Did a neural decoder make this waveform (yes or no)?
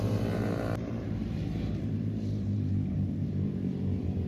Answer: yes